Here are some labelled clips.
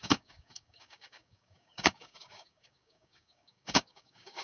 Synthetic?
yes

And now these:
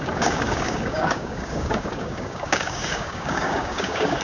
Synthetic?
yes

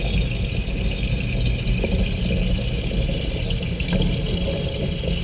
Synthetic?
no